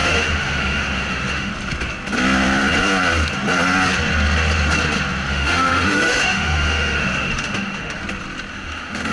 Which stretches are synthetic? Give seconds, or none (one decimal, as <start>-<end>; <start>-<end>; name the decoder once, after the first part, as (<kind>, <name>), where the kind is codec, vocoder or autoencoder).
0.0-1.5 (autoencoder, DAC-VAE); 5.3-8.0; 8.5-9.1